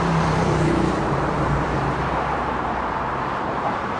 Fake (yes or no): yes